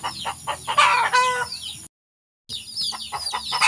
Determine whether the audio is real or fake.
real